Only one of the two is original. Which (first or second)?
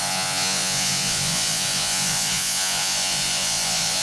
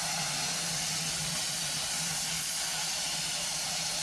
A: second